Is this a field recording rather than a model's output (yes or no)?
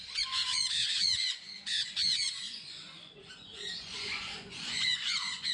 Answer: no